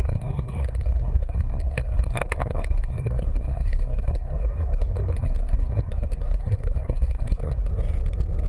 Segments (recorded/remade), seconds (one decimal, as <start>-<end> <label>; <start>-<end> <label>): 0.0-7.7 remade; 7.7-8.5 recorded